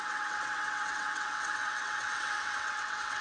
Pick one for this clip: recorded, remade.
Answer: remade